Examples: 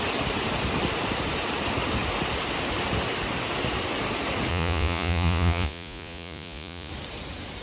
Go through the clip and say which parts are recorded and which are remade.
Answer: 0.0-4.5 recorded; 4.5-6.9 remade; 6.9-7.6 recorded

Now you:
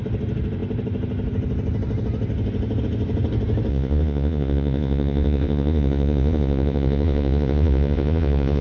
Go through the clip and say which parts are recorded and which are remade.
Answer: 0.0-3.7 recorded; 3.7-8.6 remade

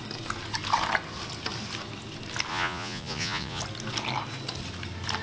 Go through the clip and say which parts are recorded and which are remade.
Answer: 0.0-2.5 recorded; 2.5-3.6 remade; 3.6-5.2 recorded

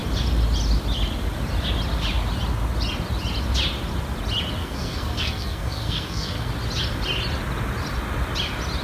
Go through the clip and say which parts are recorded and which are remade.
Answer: 0.0-4.6 recorded; 4.6-6.5 remade; 6.5-8.8 recorded

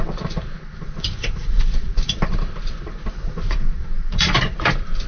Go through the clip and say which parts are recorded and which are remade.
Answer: 0.0-5.1 remade

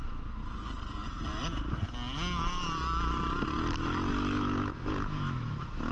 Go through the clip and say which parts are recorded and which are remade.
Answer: 0.0-0.4 remade; 0.4-3.7 recorded; 3.7-5.9 remade